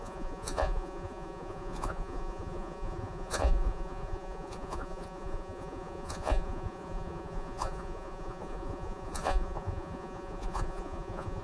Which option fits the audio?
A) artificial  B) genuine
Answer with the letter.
A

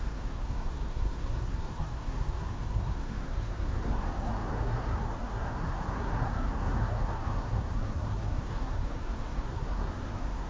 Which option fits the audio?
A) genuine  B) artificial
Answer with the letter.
B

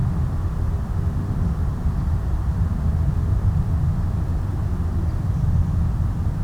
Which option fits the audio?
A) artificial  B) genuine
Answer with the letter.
B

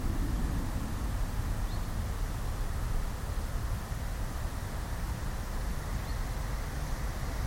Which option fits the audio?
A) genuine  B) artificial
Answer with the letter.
A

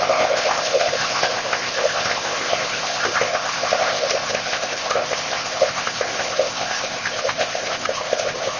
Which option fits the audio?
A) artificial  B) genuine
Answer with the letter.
A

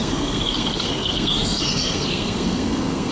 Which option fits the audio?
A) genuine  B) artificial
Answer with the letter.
B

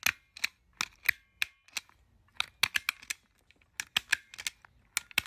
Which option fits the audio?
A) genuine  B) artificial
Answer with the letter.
A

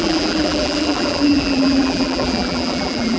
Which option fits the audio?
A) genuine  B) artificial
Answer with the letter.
B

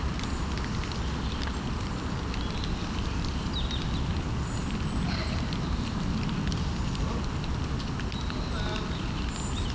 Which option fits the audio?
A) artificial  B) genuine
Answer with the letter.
B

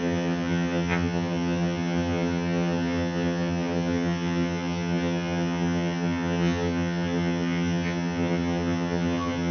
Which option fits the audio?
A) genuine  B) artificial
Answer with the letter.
B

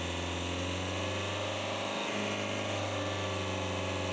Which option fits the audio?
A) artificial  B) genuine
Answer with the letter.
B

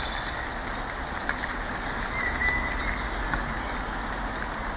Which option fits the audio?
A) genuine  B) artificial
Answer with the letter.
A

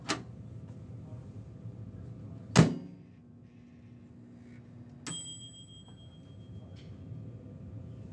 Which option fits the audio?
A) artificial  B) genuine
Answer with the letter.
B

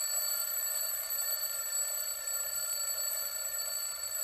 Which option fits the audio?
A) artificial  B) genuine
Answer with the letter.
A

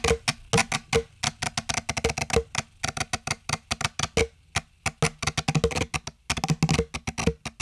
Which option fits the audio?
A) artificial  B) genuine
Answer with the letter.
B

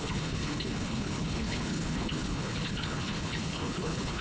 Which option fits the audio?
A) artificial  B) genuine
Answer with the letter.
A